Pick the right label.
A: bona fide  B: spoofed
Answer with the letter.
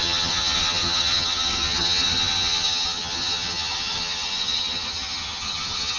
B